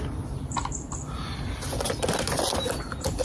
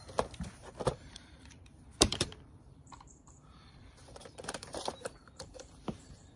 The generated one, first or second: second